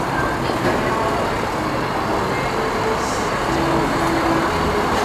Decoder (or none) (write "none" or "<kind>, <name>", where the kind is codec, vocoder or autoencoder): none